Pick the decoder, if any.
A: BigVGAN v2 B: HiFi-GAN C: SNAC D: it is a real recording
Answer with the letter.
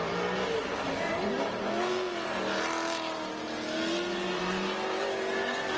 D